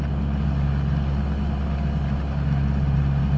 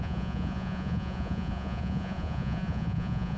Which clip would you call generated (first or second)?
second